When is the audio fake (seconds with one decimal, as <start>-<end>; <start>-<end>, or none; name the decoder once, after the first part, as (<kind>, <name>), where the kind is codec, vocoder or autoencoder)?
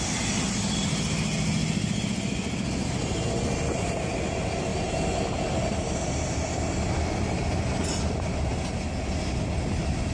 none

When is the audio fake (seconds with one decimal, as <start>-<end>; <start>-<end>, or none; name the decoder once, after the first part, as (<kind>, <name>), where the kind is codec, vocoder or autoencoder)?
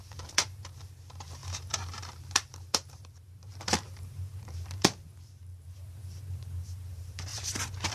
0.0-5.5 (vocoder, BigVGAN v2); 6.0-7.9